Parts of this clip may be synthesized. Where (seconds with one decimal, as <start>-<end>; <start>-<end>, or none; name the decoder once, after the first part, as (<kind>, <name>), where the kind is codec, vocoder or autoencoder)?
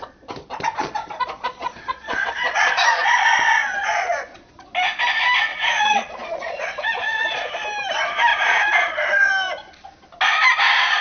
0.8-4.7 (vocoder, Vocos); 5.5-7.5; 8.3-9.3